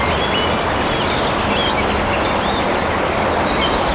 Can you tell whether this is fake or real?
real